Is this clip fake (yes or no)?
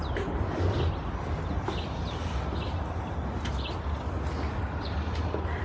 no